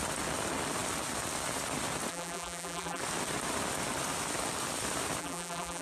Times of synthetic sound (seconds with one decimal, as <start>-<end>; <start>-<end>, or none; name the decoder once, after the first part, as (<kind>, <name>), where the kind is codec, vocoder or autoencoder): 2.1-3.0 (vocoder, BigVGAN v2); 5.2-5.8